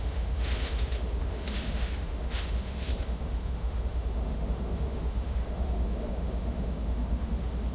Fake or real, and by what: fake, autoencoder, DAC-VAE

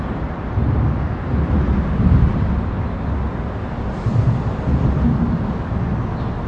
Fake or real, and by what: real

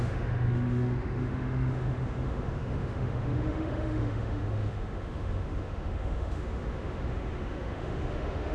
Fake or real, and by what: fake, autoencoder, DAC-VAE